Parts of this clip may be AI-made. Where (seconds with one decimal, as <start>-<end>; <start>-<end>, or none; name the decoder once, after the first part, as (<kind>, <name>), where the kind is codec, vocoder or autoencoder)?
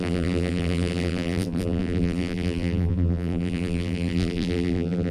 0.0-5.1 (vocoder, BigVGAN v2)